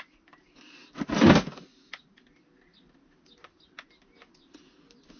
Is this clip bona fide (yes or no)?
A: yes